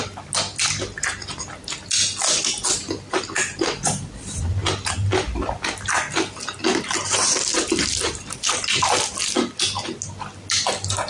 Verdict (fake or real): real